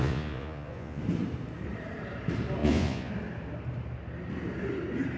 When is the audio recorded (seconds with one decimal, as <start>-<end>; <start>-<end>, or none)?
1.0-2.6; 3.1-5.2